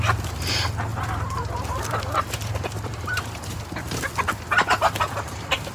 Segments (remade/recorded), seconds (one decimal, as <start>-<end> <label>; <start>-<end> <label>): 0.0-0.9 recorded; 0.9-4.3 remade; 4.3-5.7 recorded